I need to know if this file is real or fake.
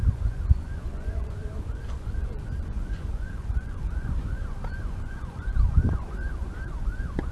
fake